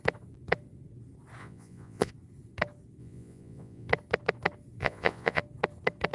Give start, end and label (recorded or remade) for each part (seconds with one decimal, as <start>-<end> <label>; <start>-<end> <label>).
0.0-1.4 recorded; 1.4-2.1 remade; 2.1-3.0 recorded; 3.0-3.9 remade; 3.9-4.8 recorded; 4.8-5.4 remade; 5.4-6.1 recorded